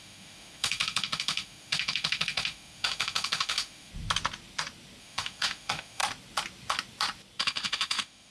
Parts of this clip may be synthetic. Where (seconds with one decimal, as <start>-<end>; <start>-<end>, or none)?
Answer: 0.0-3.9; 5.0-6.0; 7.4-8.3